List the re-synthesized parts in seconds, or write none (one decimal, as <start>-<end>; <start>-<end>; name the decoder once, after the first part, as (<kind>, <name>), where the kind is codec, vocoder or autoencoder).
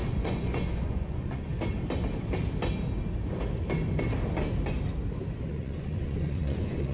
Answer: 0.0-1.5 (vocoder, Vocos); 5.5-6.9